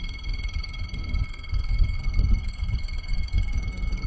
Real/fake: fake